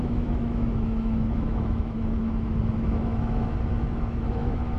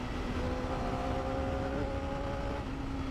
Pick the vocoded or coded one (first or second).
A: first